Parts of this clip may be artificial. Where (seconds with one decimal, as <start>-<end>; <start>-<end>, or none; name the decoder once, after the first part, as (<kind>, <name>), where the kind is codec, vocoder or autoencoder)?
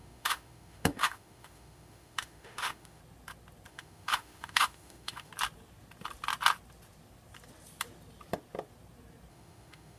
0.0-3.0 (autoencoder, DAC-VAE); 3.7-5.3; 9.3-10.0